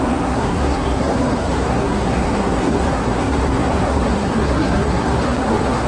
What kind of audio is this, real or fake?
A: fake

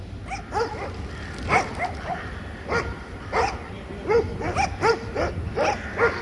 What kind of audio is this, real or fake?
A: real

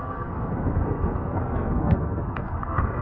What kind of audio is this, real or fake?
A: fake